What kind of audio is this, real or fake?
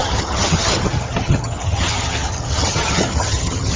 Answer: fake